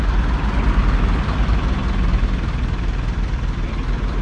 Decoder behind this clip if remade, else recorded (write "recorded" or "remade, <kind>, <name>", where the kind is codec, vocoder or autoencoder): recorded